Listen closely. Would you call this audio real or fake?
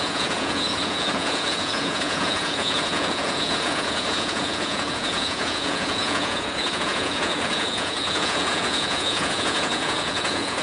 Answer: fake